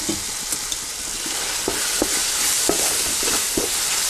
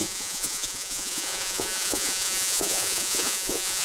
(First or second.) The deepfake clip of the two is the second